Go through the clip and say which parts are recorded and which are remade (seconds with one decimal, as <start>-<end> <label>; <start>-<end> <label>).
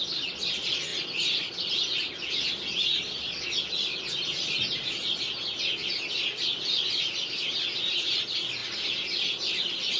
0.0-10.0 recorded